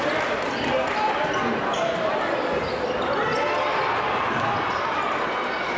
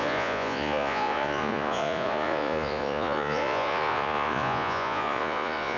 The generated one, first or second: second